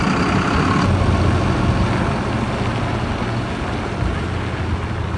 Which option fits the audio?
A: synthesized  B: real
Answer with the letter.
B